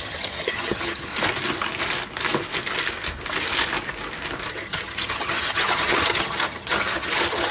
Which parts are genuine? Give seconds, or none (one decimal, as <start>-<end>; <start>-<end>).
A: 1.1-4.5

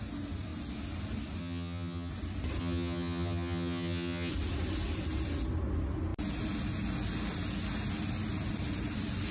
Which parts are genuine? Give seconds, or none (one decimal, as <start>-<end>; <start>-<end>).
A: 0.0-1.4; 2.1-2.6; 4.3-9.3

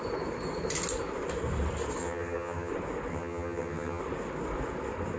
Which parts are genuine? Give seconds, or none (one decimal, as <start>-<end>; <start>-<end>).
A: 0.0-2.0; 2.7-3.1; 4.0-5.2

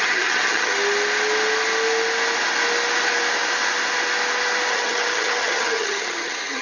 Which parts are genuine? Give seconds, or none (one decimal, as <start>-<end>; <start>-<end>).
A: 0.7-4.7